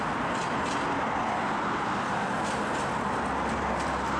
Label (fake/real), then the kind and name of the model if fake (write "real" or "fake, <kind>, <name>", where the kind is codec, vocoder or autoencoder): real